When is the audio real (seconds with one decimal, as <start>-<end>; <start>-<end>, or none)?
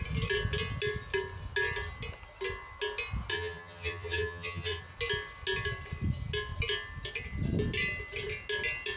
0.0-3.3; 4.8-9.0